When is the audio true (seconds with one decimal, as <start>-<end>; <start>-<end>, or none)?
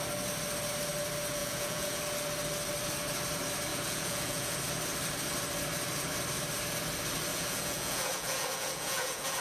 0.0-1.4; 2.0-3.7; 4.6-7.3